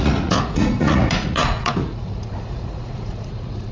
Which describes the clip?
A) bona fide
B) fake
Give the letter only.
B